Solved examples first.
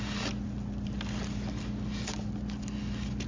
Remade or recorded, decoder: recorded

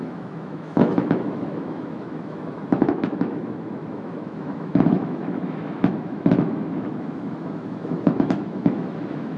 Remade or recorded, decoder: remade, autoencoder, DAC-VAE